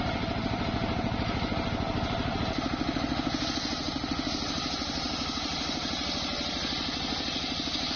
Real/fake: real